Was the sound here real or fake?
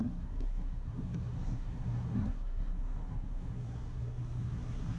fake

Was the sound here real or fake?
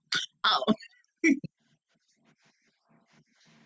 real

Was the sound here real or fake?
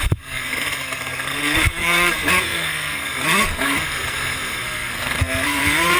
fake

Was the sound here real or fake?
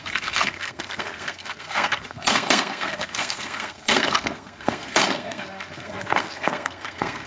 fake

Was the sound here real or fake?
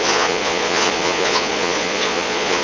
fake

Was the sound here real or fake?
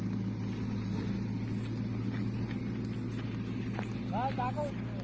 real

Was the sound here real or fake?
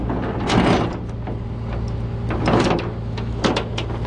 real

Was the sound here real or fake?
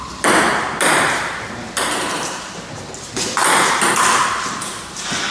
fake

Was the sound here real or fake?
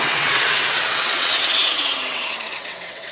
fake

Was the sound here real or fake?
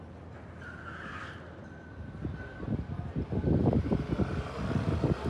real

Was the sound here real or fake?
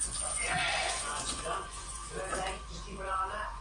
fake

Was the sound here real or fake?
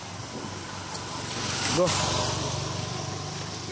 real